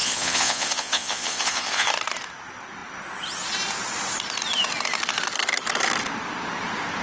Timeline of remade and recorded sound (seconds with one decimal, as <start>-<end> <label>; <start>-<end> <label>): 0.0-1.9 remade; 1.9-7.0 recorded

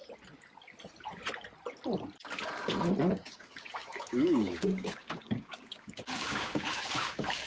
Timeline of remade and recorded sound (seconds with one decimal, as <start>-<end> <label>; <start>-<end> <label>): 0.0-3.1 recorded; 3.1-7.5 remade

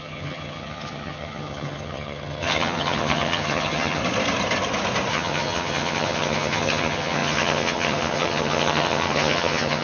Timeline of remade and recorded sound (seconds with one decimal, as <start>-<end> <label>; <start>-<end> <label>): 0.0-4.0 remade; 4.0-5.1 recorded; 5.1-9.8 remade

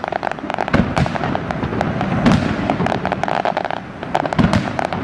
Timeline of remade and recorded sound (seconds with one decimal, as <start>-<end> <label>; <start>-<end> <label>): 0.0-5.0 recorded